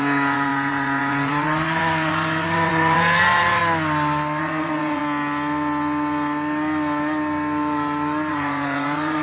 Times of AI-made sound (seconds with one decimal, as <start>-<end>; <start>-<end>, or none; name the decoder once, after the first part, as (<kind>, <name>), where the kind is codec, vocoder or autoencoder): 0.0-3.6 (vocoder, Vocos); 4.4-5.0; 8.3-9.2